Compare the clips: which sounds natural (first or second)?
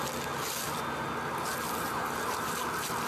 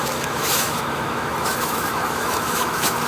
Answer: first